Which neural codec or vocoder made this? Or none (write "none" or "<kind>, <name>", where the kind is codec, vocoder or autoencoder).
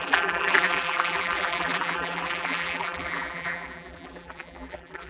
vocoder, BigVGAN v2